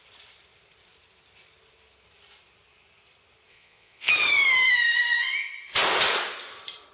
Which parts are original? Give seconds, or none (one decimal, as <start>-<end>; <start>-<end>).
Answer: 0.0-3.5; 4.1-6.9